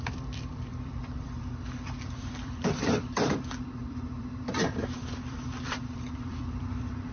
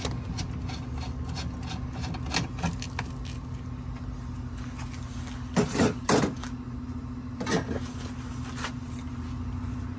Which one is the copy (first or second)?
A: first